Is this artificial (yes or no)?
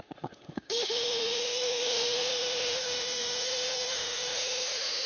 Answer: yes